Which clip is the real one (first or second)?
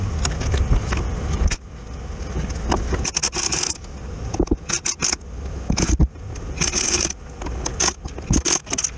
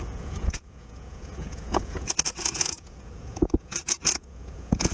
first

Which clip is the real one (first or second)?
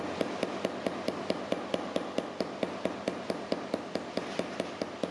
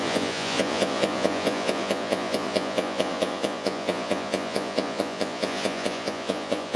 first